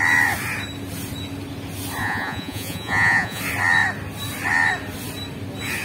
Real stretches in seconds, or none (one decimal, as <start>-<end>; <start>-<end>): 0.0-2.0; 3.4-5.8